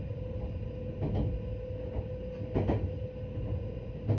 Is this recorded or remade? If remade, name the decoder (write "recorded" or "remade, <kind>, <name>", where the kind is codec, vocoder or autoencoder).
recorded